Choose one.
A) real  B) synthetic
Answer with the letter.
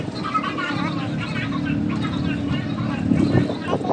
A